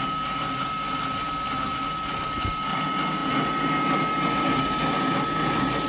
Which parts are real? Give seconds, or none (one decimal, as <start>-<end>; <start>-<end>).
0.0-5.9

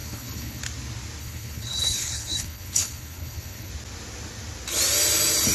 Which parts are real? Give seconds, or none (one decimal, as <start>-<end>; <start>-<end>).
0.6-1.2; 3.7-5.5

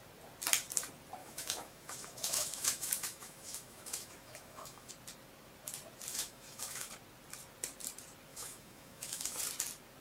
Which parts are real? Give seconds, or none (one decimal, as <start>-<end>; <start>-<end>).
0.0-1.2; 4.9-6.1; 6.9-8.3; 9.4-10.0

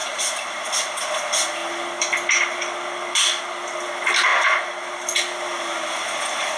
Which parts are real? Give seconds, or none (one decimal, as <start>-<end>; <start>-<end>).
0.7-6.6

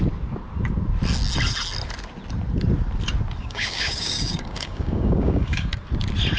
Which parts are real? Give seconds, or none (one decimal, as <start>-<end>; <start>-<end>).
0.0-3.4; 5.7-6.4

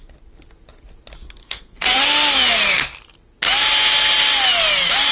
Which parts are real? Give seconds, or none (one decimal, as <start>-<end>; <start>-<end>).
0.0-1.4; 2.0-5.1

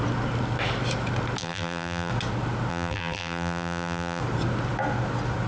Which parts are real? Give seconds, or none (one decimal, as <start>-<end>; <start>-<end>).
0.0-1.4; 2.1-2.7; 4.2-5.5

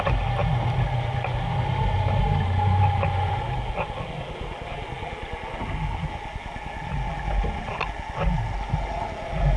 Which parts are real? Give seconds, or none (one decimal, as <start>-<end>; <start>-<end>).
0.0-9.6